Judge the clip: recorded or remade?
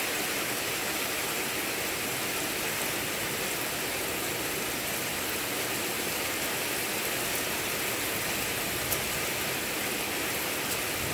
recorded